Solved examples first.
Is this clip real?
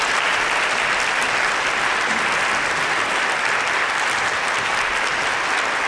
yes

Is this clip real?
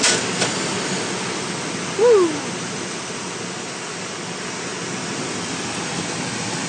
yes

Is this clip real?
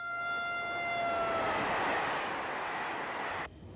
yes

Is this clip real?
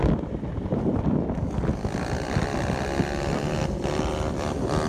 yes